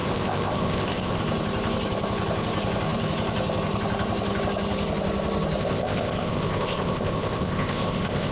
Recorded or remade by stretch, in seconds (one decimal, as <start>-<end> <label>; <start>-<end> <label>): 0.0-1.2 remade; 1.2-5.6 recorded; 5.6-8.3 remade